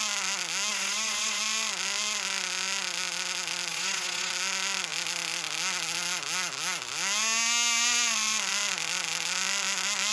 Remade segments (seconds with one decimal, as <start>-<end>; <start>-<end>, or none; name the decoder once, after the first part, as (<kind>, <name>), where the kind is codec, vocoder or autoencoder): 0.7-1.4 (vocoder, WaveNeXt); 3.7-4.3